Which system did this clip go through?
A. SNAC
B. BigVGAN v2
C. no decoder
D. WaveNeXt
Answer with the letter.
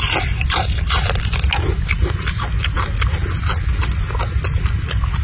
C